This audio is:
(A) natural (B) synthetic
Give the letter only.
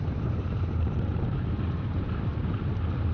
B